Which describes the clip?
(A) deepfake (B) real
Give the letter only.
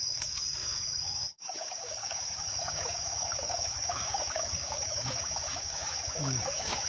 A